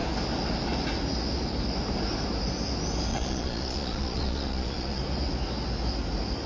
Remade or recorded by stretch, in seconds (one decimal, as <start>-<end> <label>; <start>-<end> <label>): 0.0-3.1 recorded; 3.1-5.0 remade; 5.0-6.5 recorded